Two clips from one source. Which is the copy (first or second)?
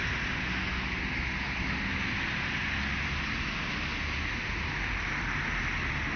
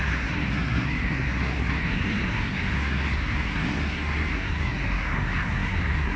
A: second